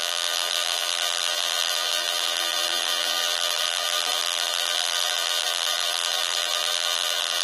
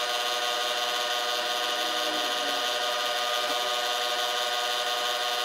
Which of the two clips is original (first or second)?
second